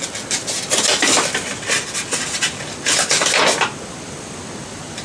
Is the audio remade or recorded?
recorded